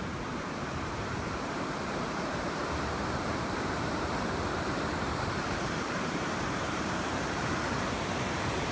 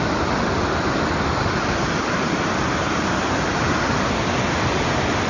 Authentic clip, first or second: second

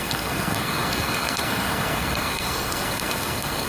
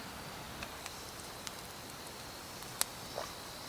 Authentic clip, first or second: second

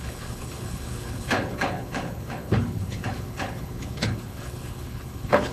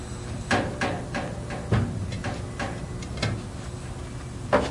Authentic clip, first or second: second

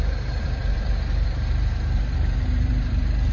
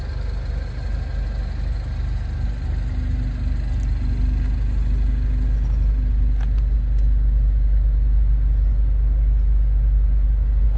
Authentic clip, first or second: second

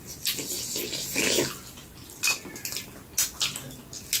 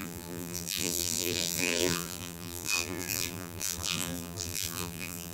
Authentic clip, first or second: first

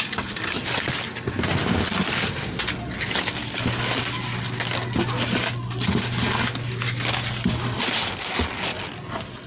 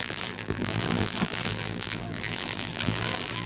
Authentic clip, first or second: first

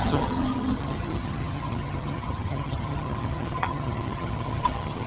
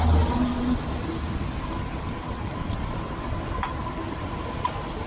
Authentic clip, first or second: second